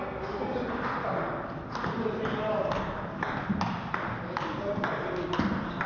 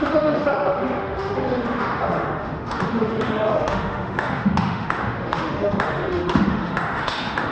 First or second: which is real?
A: first